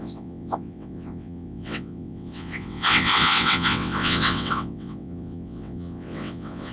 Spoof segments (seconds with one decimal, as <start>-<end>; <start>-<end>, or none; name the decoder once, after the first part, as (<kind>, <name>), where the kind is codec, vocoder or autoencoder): 0.0-6.7 (vocoder, WaveNeXt)